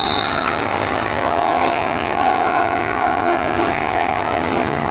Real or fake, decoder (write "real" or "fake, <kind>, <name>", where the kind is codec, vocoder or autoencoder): fake, vocoder, HiFi-GAN